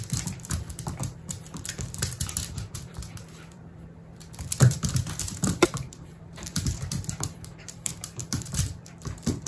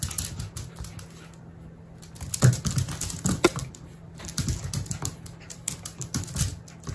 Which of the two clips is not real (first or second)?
first